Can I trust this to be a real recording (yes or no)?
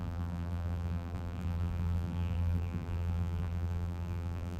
no